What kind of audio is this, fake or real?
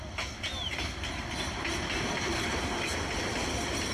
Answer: real